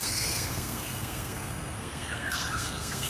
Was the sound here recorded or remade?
remade